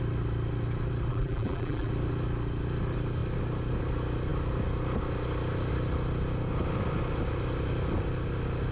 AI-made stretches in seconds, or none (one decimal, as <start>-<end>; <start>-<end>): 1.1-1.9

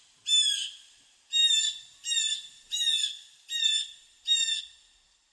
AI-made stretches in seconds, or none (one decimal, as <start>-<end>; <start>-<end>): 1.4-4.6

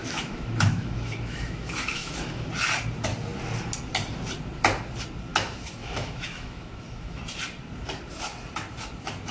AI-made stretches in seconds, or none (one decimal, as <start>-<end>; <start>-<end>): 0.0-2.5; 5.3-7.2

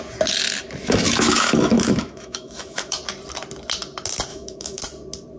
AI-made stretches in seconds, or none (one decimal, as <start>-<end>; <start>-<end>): 0.8-3.0; 4.3-4.8

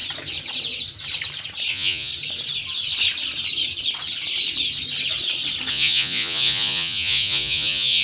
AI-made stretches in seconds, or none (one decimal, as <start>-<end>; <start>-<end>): 1.7-2.1; 5.7-8.0

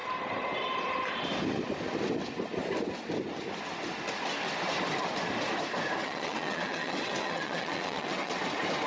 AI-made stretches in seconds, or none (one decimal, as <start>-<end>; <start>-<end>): 6.0-8.4

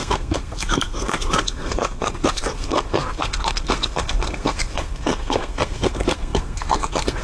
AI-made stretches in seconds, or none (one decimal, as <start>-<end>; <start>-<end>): 0.0-7.2